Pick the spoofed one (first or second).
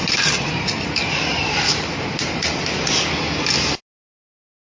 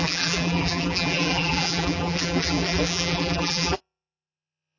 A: second